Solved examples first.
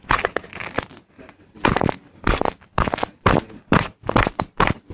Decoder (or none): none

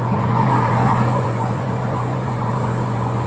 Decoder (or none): vocoder, Vocos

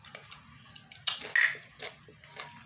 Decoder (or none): none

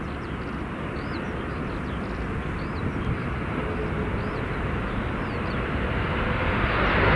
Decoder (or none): none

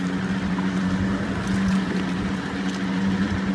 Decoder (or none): none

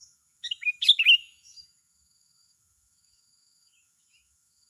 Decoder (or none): autoencoder, DAC-VAE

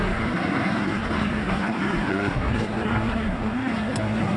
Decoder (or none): codec, SNAC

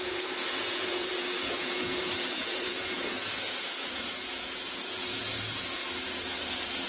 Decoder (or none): vocoder, Vocos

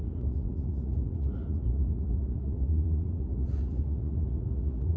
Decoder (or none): vocoder, Vocos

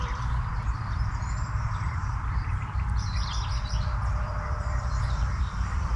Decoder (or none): vocoder, BigVGAN v2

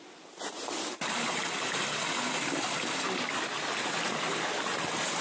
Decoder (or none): none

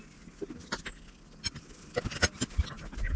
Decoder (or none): none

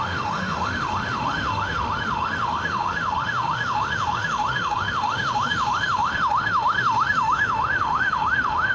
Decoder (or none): autoencoder, DAC-VAE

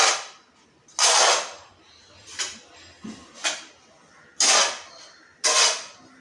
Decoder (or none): none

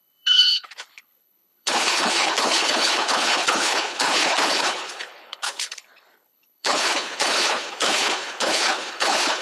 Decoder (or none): codec, HILCodec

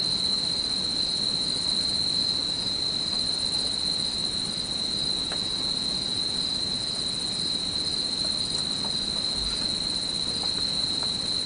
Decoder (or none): none